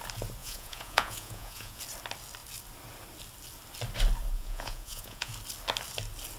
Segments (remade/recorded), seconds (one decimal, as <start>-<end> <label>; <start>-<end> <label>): 0.0-0.4 recorded; 0.4-1.8 remade; 1.8-4.3 recorded; 4.3-5.3 remade; 5.3-6.4 recorded